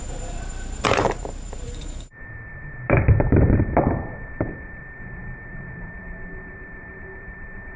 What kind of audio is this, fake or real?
fake